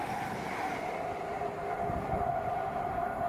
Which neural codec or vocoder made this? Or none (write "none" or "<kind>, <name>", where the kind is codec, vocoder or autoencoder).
vocoder, BigVGAN v2